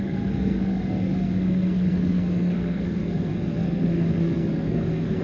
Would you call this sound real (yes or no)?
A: no